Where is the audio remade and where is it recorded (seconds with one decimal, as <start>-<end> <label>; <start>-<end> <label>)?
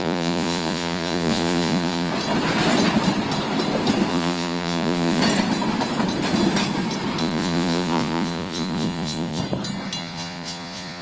0.0-2.1 remade; 2.1-4.1 recorded; 4.1-5.2 remade; 5.2-7.2 recorded; 7.2-9.4 remade; 9.4-10.0 recorded; 10.0-11.0 remade